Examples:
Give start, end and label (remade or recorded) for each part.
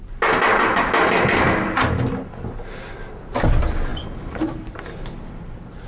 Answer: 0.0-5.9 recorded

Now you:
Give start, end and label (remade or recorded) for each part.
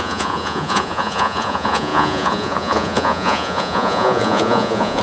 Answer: 0.0-5.0 remade